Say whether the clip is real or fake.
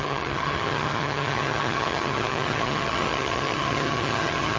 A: fake